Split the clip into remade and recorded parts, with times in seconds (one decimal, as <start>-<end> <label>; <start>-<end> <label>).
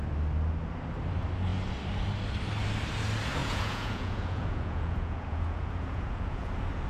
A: 0.0-3.4 recorded; 3.4-6.5 remade; 6.5-6.9 recorded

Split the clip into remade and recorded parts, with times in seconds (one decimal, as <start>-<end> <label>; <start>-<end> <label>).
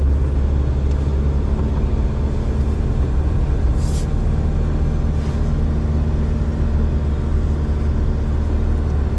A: 0.0-9.2 recorded